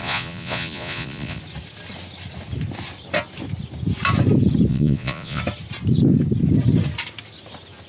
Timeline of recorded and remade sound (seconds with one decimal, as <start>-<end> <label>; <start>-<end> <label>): 0.0-1.4 remade; 1.4-4.7 recorded; 4.7-5.4 remade; 5.4-7.9 recorded